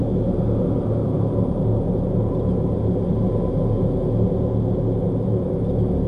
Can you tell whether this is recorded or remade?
recorded